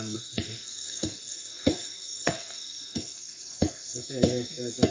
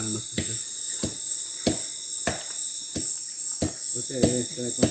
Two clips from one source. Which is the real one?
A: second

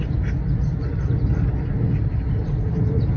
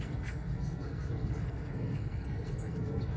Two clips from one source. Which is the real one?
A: first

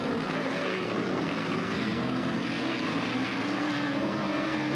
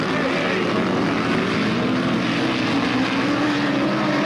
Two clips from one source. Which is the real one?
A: second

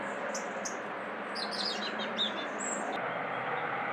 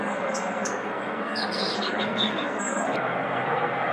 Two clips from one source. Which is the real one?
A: first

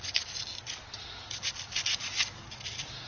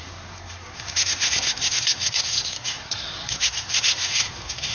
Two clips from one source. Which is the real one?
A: first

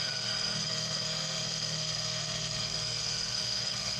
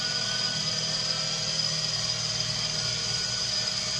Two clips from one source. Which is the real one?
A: second